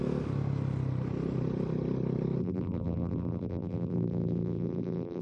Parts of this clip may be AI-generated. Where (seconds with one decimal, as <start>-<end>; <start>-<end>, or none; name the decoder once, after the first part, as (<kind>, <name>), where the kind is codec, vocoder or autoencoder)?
2.4-5.2 (vocoder, BigVGAN v2)

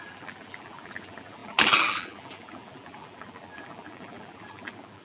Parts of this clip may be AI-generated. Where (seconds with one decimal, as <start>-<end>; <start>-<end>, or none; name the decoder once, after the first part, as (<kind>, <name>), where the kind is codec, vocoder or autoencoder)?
0.0-5.0 (vocoder, BigVGAN v2)